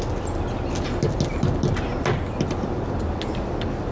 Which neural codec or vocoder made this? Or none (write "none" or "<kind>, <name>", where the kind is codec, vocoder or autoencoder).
none